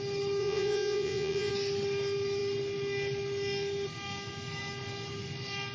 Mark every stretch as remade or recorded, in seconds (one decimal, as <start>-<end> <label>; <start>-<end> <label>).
0.0-0.4 recorded; 0.4-1.5 remade; 1.5-5.7 recorded